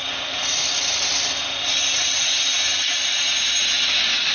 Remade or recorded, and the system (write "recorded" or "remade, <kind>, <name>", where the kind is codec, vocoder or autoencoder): recorded